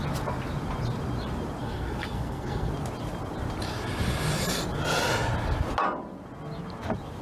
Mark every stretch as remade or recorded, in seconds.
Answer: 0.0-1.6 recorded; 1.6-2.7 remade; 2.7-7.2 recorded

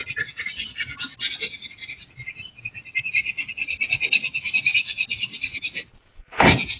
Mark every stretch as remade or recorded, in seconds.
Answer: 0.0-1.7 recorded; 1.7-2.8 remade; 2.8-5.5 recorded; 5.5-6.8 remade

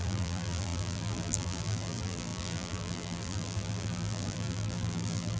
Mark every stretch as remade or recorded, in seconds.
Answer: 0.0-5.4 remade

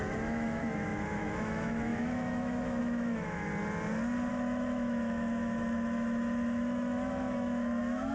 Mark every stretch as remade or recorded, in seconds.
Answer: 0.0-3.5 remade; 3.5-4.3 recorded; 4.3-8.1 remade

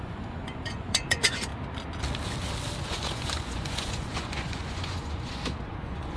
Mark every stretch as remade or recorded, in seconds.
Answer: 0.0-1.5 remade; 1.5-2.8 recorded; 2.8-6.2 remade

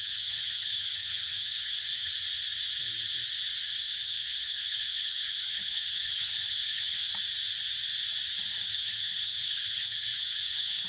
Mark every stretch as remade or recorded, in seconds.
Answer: 0.0-2.1 remade; 2.1-3.8 recorded; 3.8-7.1 remade; 7.1-8.6 recorded; 8.6-10.9 remade

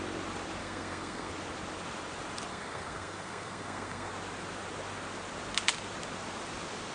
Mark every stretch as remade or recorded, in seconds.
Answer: 0.0-0.6 recorded; 0.6-1.3 remade; 1.3-2.5 recorded; 2.5-4.1 remade; 4.1-6.9 recorded